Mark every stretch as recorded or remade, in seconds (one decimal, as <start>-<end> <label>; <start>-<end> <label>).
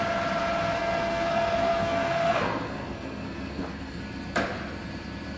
0.0-0.8 recorded; 0.8-4.0 remade; 4.0-5.4 recorded